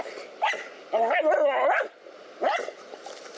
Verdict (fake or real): real